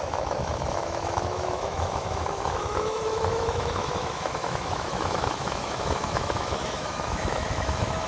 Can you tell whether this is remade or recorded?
remade